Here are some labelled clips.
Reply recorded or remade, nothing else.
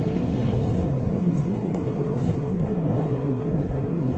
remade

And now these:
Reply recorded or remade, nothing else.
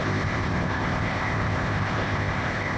remade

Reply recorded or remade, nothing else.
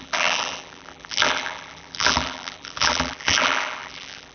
remade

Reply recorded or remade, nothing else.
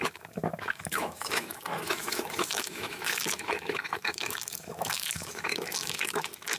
remade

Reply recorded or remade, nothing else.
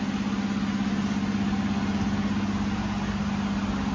recorded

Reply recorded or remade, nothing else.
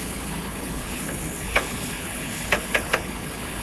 remade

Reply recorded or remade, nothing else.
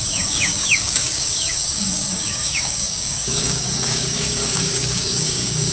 remade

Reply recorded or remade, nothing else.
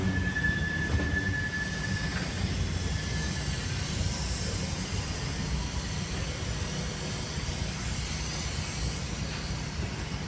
recorded